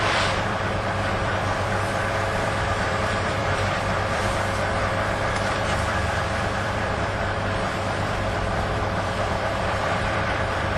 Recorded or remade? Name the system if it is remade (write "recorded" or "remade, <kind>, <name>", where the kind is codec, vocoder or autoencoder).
remade, vocoder, BigVGAN v2